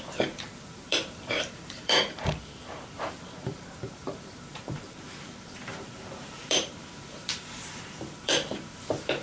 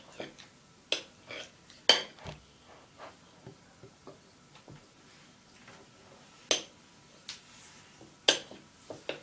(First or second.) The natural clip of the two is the second